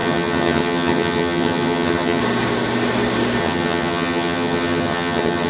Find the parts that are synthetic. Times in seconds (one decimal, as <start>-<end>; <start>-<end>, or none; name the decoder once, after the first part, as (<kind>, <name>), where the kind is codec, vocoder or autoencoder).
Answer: 0.0-2.2 (vocoder, HiFi-GAN); 3.4-5.5